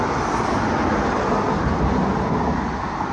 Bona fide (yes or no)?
yes